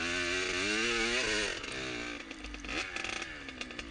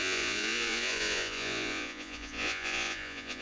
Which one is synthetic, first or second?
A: second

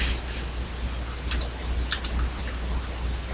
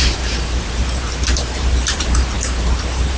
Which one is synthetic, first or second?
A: second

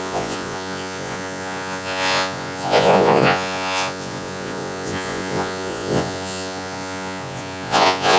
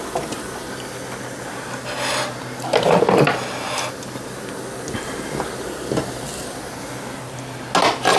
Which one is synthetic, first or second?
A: first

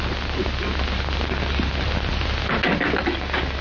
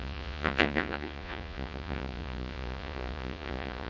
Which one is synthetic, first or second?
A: second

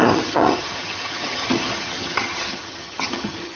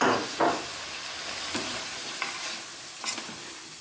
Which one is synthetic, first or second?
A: first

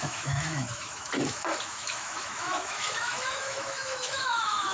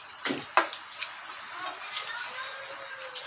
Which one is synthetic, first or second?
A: first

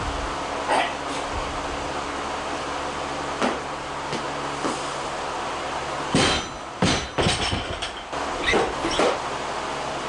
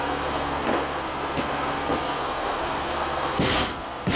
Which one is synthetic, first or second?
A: second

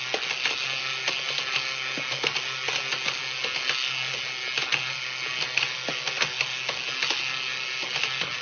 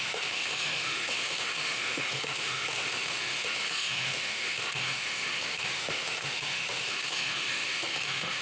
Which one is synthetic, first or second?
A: second